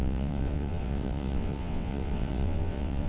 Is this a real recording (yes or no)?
no